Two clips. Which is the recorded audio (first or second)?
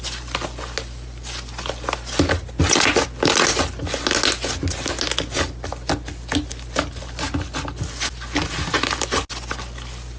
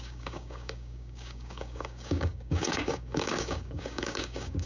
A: first